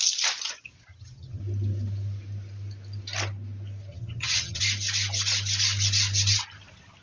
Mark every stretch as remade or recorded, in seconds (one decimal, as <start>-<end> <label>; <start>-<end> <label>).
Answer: 0.0-0.9 recorded; 0.9-1.4 remade; 1.4-3.9 recorded; 3.9-4.6 remade; 4.6-7.0 recorded